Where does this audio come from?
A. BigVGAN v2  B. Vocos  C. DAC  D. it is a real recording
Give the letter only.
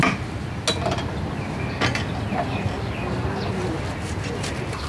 D